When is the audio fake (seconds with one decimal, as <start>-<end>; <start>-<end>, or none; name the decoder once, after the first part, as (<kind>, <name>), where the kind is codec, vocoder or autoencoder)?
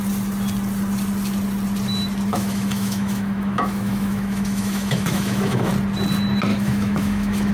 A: 2.3-5.7 (autoencoder, DAC-VAE); 6.5-7.5